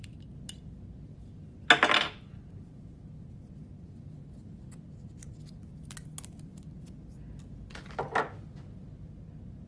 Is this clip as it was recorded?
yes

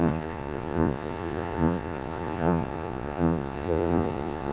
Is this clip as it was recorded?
no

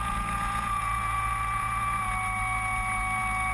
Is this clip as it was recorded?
no